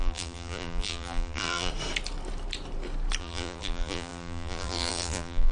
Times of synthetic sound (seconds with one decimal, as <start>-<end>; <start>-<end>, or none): 0.0-1.7; 3.2-5.5